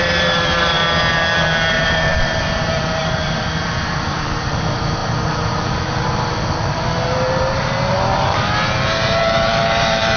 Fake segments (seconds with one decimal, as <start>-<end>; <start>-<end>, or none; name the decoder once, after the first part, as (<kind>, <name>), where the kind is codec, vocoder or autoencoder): 0.0-0.8 (vocoder, BigVGAN v2); 1.7-10.2